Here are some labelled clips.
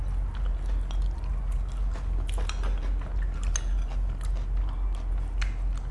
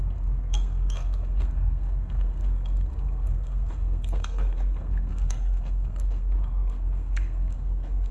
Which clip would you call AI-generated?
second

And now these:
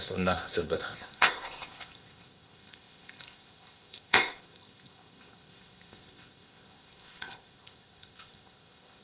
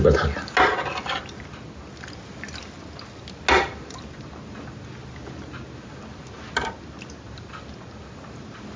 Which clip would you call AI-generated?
first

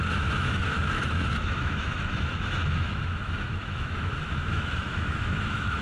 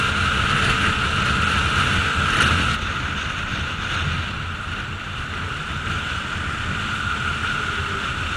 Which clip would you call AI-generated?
first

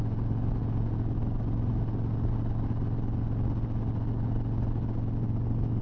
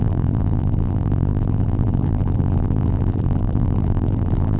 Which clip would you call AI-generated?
second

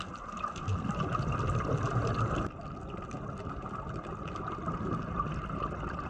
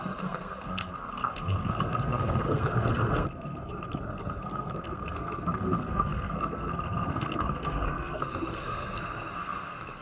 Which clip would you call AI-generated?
second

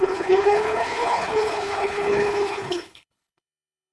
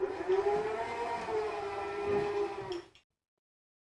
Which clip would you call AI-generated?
first